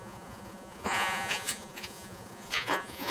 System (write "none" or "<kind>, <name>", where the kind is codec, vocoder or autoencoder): vocoder, Vocos